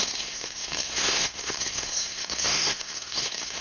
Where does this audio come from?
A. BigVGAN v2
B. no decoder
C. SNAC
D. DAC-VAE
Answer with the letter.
C